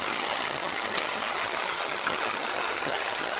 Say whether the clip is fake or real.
fake